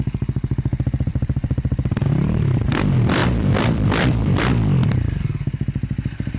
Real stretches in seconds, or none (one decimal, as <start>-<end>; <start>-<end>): 0.0-1.1; 2.1-3.2; 4.4-6.4